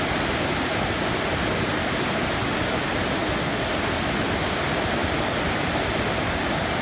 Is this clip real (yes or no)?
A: yes